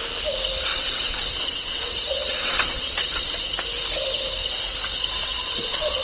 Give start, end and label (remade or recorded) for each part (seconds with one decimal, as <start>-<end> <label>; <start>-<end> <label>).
0.0-0.7 recorded; 0.7-3.4 remade; 3.4-5.2 recorded; 5.2-6.0 remade